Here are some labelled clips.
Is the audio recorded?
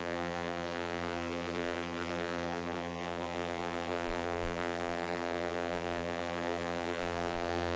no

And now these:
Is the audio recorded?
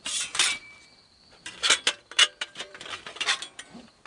no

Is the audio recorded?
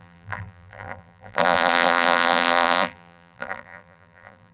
no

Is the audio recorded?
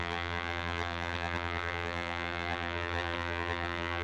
no